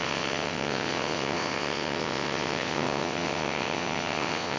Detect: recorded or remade remade